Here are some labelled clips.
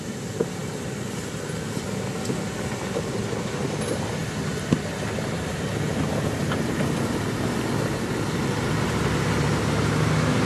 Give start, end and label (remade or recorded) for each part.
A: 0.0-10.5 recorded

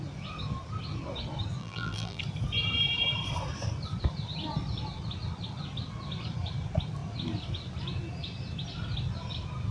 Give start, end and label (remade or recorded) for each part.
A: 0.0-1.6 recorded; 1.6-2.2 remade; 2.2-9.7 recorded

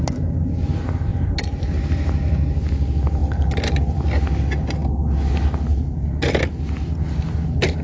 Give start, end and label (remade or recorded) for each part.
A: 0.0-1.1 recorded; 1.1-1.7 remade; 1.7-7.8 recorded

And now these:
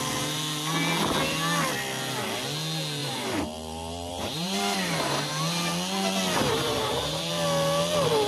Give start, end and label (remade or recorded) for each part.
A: 0.0-3.0 recorded; 3.0-5.3 remade; 5.3-6.4 recorded; 6.4-7.3 remade; 7.3-8.3 recorded

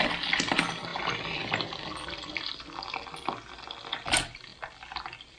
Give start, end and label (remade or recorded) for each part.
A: 0.0-5.4 recorded

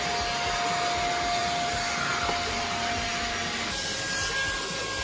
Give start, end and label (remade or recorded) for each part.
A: 0.0-5.0 recorded

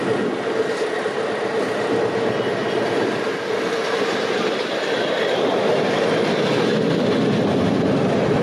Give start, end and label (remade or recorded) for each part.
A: 0.0-8.4 recorded

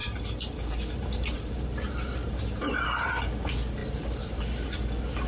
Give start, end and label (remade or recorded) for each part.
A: 0.0-3.2 remade; 3.2-3.8 recorded; 3.8-4.4 remade; 4.4-5.3 recorded